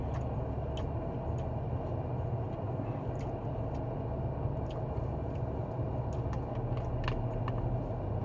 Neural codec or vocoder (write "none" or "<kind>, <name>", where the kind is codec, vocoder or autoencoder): none